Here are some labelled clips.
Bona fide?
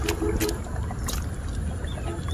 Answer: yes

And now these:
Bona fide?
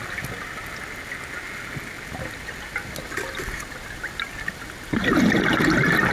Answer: yes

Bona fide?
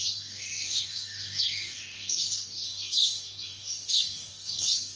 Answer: no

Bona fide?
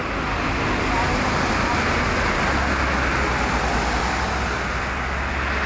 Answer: yes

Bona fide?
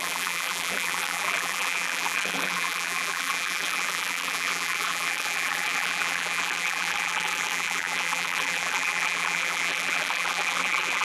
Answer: no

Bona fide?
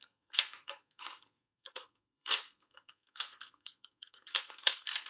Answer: no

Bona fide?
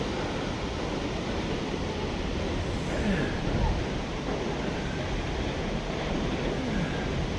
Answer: yes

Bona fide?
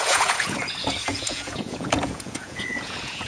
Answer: no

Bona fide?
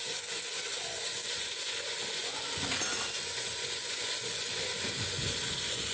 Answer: no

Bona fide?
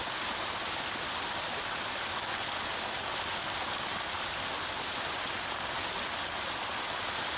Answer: yes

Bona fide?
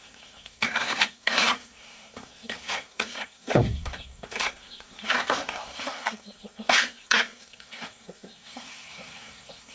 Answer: no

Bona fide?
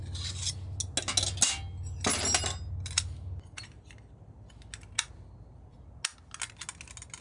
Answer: yes